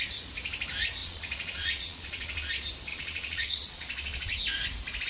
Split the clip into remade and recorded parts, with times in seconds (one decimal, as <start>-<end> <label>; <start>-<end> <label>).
0.0-1.0 recorded; 1.0-2.5 remade; 2.5-2.9 recorded; 2.9-4.3 remade; 4.3-5.1 recorded